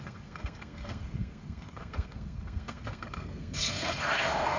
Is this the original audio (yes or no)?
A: no